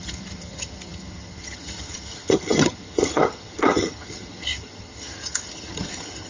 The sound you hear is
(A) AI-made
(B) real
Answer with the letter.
A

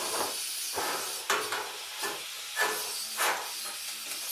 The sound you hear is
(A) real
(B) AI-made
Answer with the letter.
A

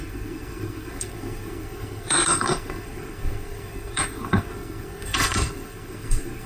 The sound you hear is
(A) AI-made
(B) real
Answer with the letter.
A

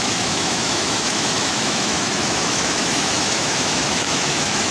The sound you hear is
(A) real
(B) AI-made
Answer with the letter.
B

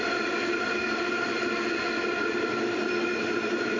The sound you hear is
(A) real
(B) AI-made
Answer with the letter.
A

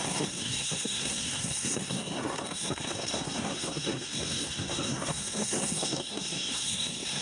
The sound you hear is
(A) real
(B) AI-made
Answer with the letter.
B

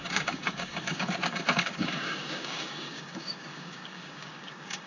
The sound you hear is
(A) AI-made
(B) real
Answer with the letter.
A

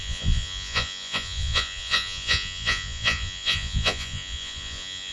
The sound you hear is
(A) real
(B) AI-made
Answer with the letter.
B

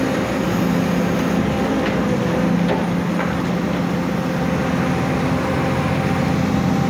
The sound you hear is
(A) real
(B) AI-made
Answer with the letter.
A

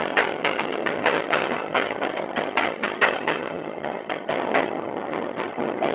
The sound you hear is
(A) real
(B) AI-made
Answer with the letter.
B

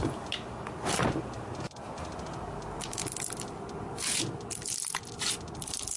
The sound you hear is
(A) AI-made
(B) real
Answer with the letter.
B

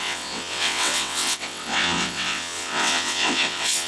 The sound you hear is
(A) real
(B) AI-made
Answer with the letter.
B